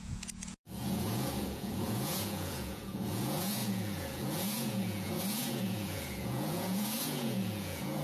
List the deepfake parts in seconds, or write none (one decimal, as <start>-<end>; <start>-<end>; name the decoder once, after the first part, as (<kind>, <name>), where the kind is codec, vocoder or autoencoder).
0.0-8.0 (vocoder, Vocos)